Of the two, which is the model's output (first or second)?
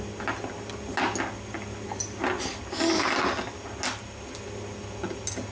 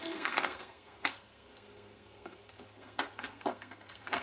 second